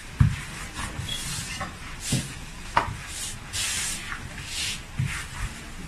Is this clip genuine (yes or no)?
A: yes